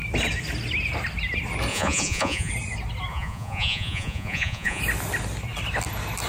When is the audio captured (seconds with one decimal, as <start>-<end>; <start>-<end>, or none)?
0.0-1.7; 2.5-3.1; 4.8-6.3